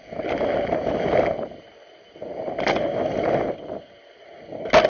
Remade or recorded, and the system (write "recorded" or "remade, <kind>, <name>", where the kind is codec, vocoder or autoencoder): recorded